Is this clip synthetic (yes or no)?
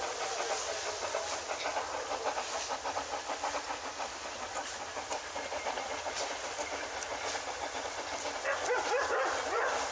no